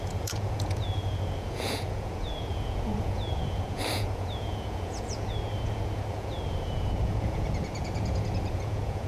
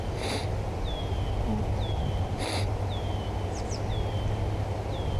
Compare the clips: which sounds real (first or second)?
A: second